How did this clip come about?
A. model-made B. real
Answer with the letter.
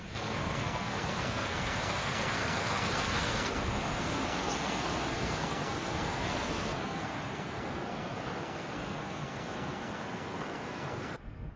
A